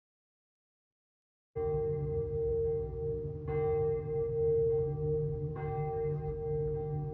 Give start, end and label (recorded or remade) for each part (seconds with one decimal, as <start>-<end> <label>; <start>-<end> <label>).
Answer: 0.0-5.5 recorded; 5.5-6.3 remade; 6.3-7.1 recorded